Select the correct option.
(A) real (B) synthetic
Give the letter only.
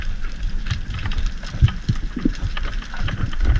B